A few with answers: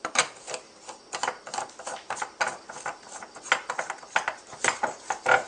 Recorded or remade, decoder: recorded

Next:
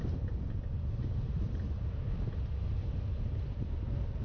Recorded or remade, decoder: remade, vocoder, BigVGAN v2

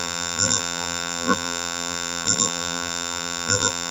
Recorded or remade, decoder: remade, vocoder, BigVGAN v2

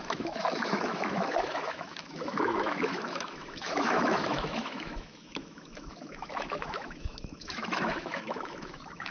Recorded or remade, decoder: remade, autoencoder, DAC-VAE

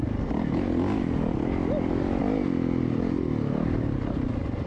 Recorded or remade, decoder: recorded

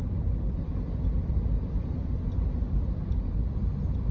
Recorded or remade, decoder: remade, vocoder, BigVGAN v2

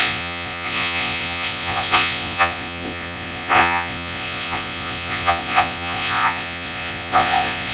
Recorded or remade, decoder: remade, vocoder, Vocos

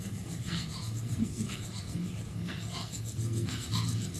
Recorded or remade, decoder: remade, codec, SNAC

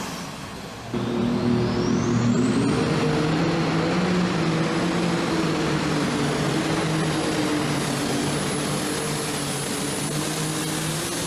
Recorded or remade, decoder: recorded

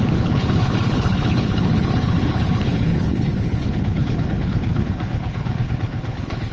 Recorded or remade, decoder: remade, codec, HILCodec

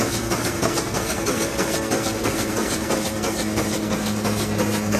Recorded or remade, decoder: remade, codec, SNAC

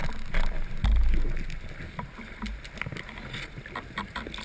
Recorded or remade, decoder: recorded